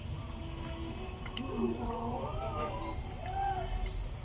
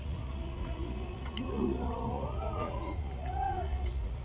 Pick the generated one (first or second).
second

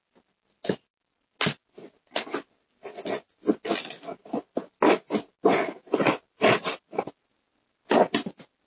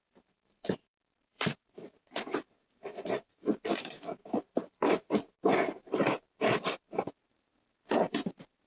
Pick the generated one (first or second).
second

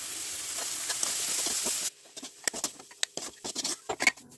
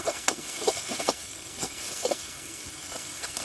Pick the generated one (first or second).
second